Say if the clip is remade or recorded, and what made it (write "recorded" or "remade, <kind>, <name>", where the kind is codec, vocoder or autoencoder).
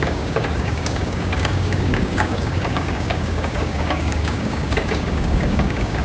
remade, codec, DAC